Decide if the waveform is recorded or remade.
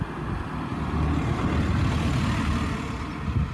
recorded